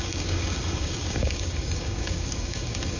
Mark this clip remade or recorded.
remade